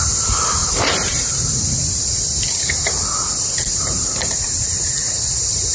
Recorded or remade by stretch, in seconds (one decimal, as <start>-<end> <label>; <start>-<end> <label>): 0.0-3.0 remade; 3.0-3.6 recorded; 3.6-5.7 remade